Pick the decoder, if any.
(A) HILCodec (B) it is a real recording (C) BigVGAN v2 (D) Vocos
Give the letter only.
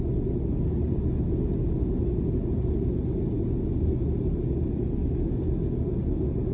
B